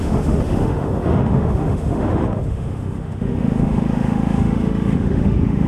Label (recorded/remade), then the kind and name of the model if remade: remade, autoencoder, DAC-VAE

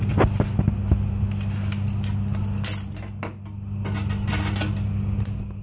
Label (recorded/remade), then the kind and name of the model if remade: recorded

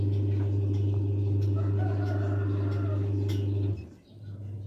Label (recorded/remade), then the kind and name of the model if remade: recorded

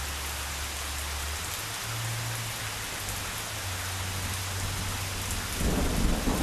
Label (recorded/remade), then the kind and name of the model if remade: recorded